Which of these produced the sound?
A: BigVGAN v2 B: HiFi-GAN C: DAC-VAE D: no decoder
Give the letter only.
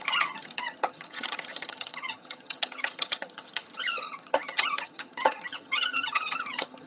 B